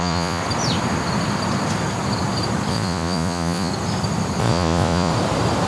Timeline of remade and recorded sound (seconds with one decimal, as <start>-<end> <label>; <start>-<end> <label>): 0.0-0.4 remade; 0.4-2.7 recorded; 2.7-3.7 remade; 3.7-4.4 recorded; 4.4-5.1 remade; 5.1-5.7 recorded

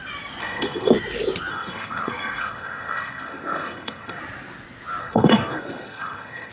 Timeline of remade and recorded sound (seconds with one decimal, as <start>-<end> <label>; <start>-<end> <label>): 0.0-0.4 recorded; 0.4-0.9 remade; 0.9-1.5 recorded; 1.5-4.2 remade; 4.2-5.0 recorded; 5.0-6.5 remade

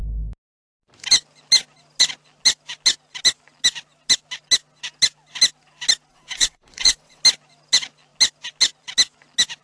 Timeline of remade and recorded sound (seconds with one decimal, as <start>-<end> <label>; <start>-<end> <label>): 0.0-6.1 recorded; 6.1-7.2 remade; 7.2-9.6 recorded

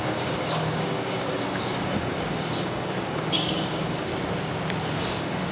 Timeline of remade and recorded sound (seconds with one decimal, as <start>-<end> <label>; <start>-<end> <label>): 0.0-4.1 remade; 4.1-4.8 recorded; 4.8-5.5 remade

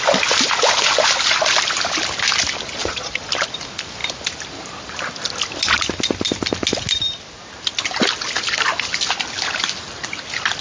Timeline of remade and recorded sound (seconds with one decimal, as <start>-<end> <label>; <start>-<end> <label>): 0.0-2.8 recorded; 2.8-3.3 remade; 3.3-10.6 recorded